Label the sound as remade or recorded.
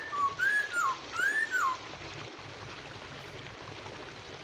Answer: recorded